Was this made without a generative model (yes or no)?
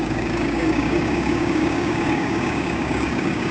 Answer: no